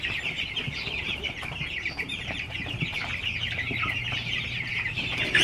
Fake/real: fake